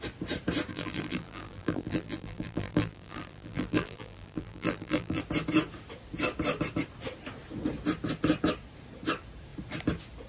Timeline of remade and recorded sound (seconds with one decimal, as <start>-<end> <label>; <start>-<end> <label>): 0.0-0.7 recorded; 0.7-5.2 remade; 5.2-10.3 recorded